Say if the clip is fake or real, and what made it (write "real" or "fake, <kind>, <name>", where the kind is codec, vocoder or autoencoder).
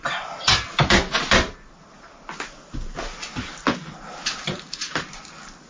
real